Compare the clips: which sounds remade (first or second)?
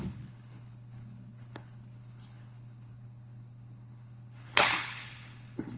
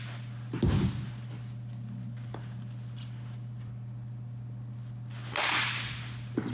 first